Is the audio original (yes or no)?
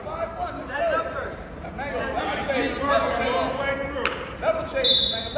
yes